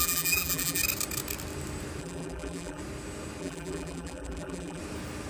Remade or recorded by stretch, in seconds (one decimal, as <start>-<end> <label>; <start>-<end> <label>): 0.0-0.8 remade; 0.8-2.0 recorded; 2.0-2.8 remade; 2.8-3.4 recorded; 3.4-4.8 remade; 4.8-5.3 recorded